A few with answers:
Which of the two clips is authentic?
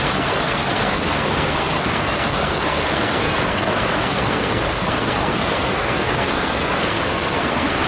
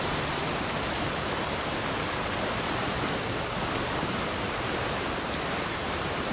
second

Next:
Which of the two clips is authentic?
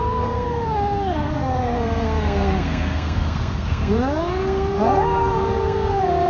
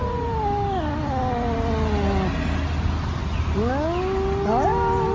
second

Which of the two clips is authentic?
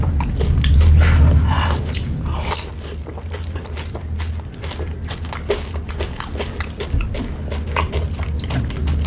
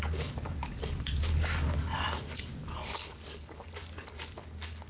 first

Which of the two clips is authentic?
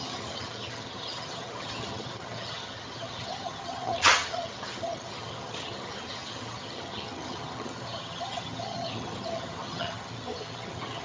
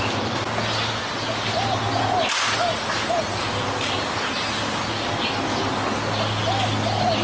second